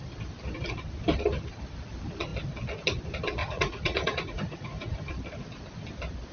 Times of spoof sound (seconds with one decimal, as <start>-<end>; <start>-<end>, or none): 3.4-5.1